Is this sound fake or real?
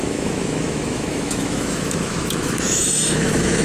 fake